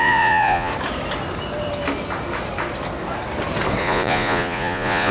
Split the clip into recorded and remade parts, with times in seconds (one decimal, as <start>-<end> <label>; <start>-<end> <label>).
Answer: 0.0-0.7 remade; 0.7-3.8 recorded; 3.8-5.1 remade